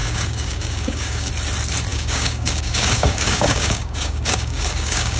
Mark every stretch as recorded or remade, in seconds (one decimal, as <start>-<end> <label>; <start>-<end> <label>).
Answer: 0.0-1.3 remade; 1.3-1.9 recorded; 1.9-5.2 remade